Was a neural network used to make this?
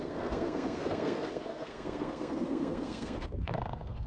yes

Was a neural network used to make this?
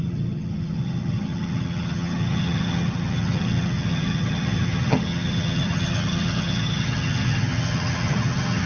yes